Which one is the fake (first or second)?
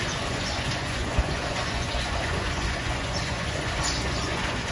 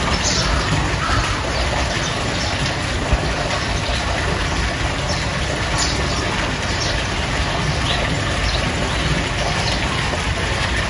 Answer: first